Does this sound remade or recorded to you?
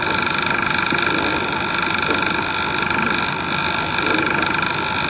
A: recorded